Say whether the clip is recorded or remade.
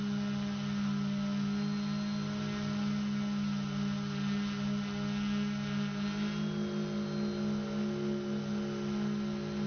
recorded